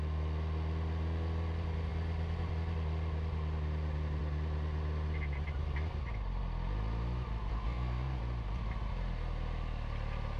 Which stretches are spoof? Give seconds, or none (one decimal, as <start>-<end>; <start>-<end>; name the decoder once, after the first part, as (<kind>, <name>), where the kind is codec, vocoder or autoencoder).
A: 7.5-8.2 (codec, SNAC)